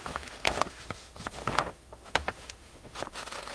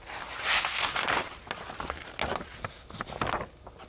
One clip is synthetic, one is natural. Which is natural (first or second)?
second